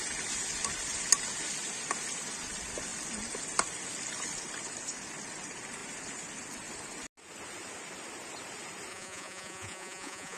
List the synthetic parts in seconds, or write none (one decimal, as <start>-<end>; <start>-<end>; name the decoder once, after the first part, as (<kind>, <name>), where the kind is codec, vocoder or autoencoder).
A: 8.9-10.4 (vocoder, Vocos)